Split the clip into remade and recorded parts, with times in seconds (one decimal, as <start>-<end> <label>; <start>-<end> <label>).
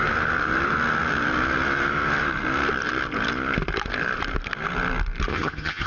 0.0-5.3 recorded; 5.3-5.9 remade